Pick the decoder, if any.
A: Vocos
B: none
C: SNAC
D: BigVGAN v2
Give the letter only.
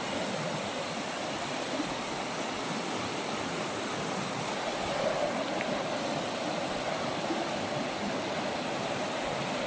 B